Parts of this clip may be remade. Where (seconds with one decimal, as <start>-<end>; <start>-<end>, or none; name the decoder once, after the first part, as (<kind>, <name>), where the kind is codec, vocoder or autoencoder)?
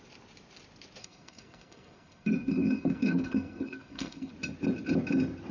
1.0-4.3 (codec, SNAC)